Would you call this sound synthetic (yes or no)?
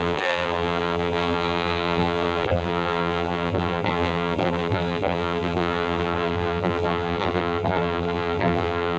yes